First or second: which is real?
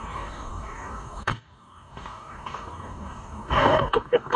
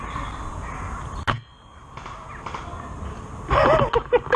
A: second